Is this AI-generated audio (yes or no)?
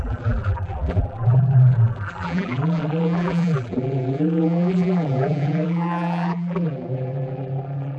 yes